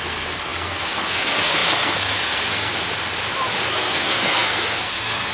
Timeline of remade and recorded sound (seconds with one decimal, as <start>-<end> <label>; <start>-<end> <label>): 0.0-2.7 remade; 2.7-3.7 recorded; 3.7-5.3 remade